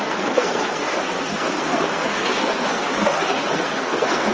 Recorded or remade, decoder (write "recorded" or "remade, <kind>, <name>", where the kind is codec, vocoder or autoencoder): remade, codec, SNAC